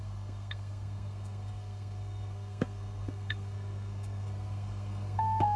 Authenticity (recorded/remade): remade